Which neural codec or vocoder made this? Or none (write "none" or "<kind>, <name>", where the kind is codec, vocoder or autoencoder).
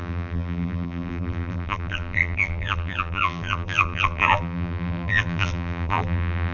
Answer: vocoder, BigVGAN v2